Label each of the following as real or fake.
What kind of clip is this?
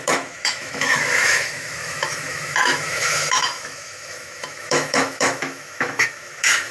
fake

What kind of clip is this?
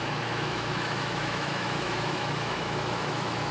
fake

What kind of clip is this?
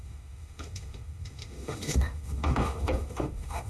fake